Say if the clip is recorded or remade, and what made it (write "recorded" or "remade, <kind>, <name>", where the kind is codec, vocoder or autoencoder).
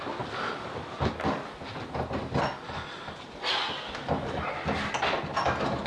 recorded